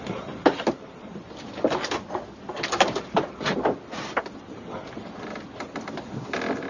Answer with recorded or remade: remade